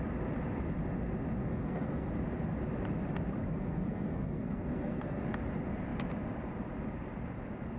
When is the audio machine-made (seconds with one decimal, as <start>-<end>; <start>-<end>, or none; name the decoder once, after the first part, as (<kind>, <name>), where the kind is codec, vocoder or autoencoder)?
1.4-2.1 (codec, SNAC); 3.4-5.2

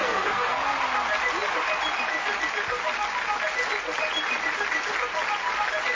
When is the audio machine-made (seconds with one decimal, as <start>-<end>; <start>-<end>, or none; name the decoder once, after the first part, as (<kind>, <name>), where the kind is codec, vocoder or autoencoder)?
0.0-0.6 (codec, SNAC)

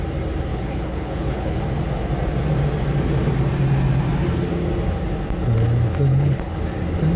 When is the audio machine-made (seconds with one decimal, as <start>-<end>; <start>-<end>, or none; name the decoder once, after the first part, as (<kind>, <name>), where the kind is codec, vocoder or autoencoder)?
0.5-1.6 (codec, HILCodec); 6.1-6.6